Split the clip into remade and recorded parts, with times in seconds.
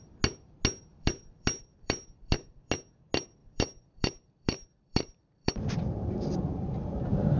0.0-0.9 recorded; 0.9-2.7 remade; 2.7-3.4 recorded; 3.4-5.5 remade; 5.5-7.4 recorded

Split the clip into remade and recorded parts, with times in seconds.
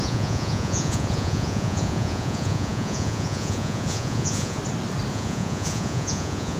0.0-4.6 remade; 4.6-5.1 recorded; 5.1-6.6 remade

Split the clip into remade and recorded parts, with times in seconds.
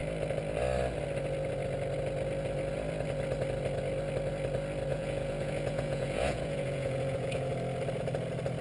0.0-4.9 recorded; 4.9-7.5 remade; 7.5-8.6 recorded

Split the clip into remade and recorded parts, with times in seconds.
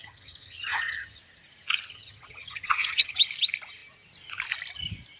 0.0-1.2 remade; 1.2-1.9 recorded; 1.9-3.2 remade; 3.2-5.2 recorded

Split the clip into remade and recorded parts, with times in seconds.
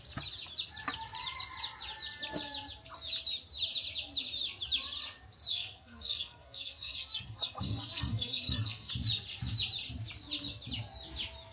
0.0-5.5 recorded; 5.5-8.9 remade; 8.9-11.5 recorded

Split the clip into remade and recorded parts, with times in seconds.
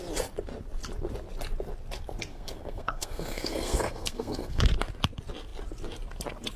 0.0-2.3 recorded; 2.3-4.6 remade; 4.6-6.6 recorded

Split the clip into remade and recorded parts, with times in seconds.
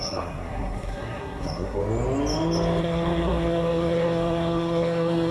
0.0-1.8 remade; 1.8-2.8 recorded; 2.8-5.3 remade